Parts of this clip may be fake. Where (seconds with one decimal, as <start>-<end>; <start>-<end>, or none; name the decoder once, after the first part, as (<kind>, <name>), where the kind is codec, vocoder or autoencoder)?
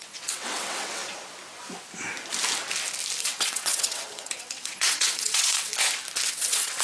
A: 0.0-1.0 (vocoder, WaveNeXt); 3.2-5.7; 6.3-6.8